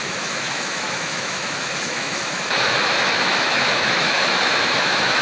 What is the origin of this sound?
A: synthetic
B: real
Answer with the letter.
A